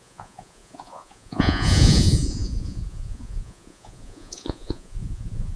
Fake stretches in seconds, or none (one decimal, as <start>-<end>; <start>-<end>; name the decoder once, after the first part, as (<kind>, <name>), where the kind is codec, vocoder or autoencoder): 0.0-5.6 (vocoder, Vocos)